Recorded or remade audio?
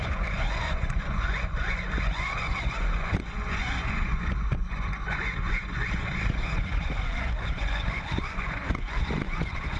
remade